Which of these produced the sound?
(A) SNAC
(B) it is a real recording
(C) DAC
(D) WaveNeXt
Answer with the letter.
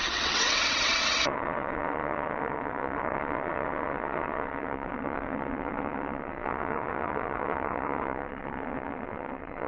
D